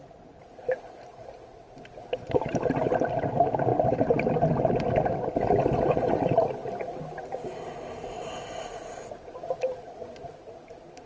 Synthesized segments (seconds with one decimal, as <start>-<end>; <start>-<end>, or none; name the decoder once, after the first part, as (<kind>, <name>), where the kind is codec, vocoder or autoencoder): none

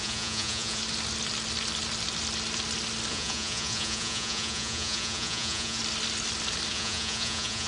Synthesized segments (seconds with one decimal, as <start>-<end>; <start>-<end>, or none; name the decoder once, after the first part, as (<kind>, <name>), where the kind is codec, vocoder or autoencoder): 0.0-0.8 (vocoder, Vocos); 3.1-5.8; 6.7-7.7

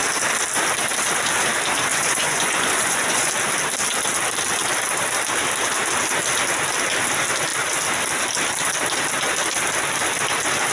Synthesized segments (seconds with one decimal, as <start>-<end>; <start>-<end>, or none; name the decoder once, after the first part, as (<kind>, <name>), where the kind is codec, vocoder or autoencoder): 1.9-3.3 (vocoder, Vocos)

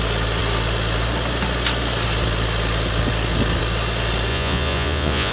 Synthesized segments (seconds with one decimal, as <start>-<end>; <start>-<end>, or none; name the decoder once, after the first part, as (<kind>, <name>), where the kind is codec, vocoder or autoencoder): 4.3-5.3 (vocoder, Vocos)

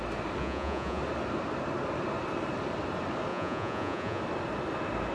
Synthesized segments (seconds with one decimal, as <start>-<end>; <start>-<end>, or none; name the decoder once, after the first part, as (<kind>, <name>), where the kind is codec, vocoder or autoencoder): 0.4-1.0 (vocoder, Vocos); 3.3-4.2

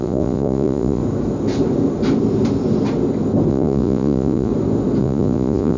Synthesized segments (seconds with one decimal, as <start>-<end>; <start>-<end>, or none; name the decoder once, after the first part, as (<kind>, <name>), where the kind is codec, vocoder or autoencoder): 0.0-1.0 (vocoder, Vocos); 3.5-4.5; 5.0-5.8